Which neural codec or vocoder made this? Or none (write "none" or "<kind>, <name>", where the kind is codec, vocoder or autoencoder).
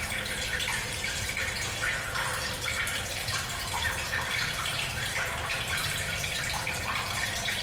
vocoder, BigVGAN v2